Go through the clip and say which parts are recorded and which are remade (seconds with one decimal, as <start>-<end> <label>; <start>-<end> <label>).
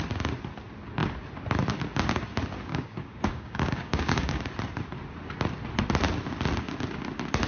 0.0-2.7 recorded; 2.7-4.4 remade; 4.4-7.5 recorded